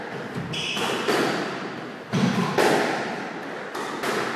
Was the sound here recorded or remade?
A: recorded